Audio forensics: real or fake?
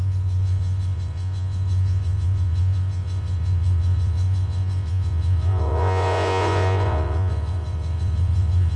fake